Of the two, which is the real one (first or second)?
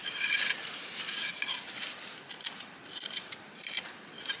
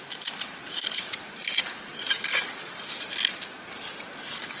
second